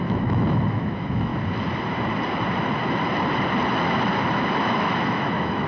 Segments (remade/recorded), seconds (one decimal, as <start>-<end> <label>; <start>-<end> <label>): 0.0-1.3 remade; 1.3-4.6 recorded; 4.6-5.7 remade